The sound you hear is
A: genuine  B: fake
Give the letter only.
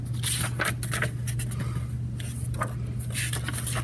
A